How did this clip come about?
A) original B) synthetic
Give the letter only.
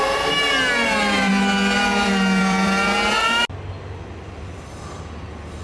A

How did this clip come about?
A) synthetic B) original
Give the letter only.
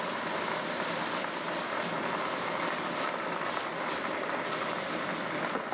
B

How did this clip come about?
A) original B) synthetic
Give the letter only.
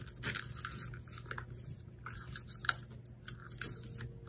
A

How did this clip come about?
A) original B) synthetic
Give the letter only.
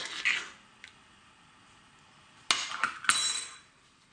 A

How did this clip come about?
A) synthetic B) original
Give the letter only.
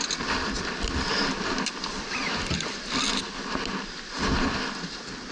B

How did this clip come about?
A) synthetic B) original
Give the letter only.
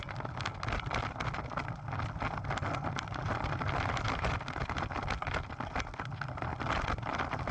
B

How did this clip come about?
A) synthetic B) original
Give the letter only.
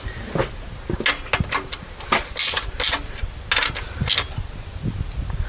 B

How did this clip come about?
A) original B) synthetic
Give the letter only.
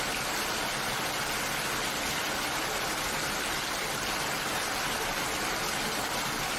A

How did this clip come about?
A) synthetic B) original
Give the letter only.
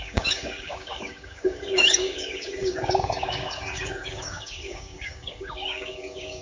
A